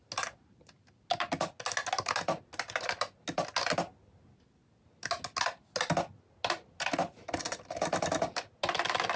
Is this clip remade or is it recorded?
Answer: recorded